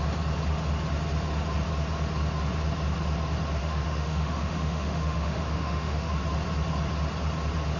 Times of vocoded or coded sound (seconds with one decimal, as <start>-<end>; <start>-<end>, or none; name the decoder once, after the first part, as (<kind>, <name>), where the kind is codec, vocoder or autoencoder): 3.6-6.1 (autoencoder, DAC-VAE)